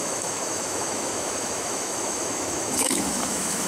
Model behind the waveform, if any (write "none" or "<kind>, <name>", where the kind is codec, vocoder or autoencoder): autoencoder, DAC-VAE